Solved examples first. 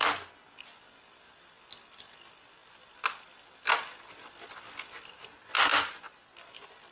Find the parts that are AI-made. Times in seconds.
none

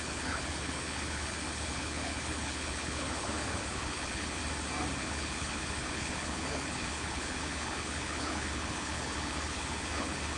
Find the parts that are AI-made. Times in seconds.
0.0-4.4 (codec, HILCodec); 5.0-10.4

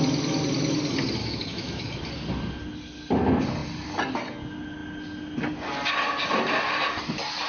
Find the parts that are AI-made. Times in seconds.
1.2-2.0 (autoencoder, DAC-VAE)

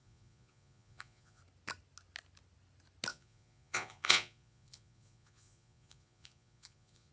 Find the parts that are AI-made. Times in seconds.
0.0-1.4 (vocoder, Vocos); 3.1-7.1